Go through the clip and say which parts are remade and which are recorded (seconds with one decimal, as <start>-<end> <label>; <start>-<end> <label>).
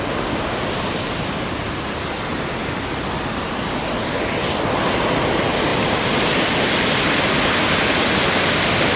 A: 0.0-2.6 recorded; 2.6-3.5 remade; 3.5-9.0 recorded